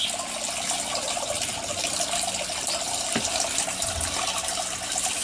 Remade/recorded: recorded